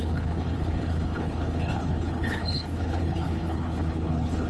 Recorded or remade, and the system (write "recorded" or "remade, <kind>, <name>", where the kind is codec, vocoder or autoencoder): remade, codec, HILCodec